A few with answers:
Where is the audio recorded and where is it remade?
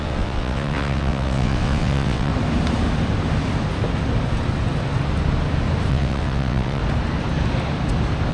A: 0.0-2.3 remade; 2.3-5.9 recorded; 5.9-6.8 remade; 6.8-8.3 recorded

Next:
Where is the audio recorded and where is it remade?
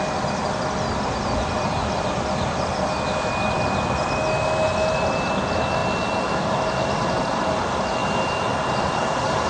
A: 0.0-9.5 recorded